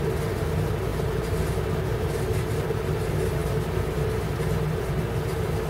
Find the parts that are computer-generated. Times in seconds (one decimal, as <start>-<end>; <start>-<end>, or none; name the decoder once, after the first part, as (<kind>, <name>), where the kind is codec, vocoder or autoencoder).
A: none